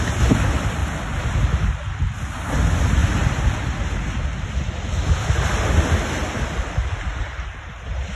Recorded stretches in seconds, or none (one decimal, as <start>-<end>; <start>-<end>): 0.0-8.2